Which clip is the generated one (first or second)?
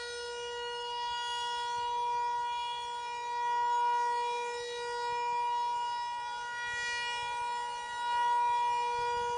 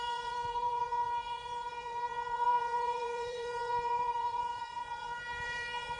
second